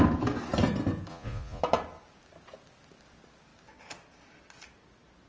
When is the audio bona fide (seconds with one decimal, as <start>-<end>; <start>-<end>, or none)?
0.0-1.1; 1.6-5.3